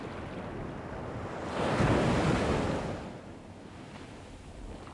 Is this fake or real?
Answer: real